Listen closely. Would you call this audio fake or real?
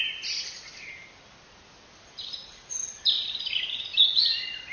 real